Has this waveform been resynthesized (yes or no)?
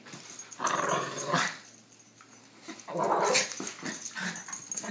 no